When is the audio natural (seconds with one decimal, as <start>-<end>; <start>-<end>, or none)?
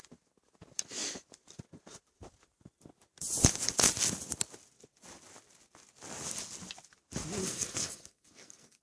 0.0-7.4